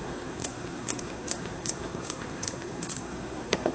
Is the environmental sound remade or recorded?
remade